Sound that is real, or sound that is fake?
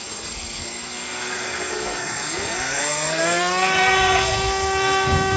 fake